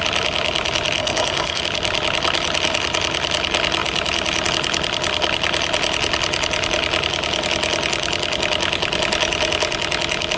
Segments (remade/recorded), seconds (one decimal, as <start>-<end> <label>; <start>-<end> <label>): 0.0-1.0 recorded; 1.0-1.6 remade; 1.6-10.4 recorded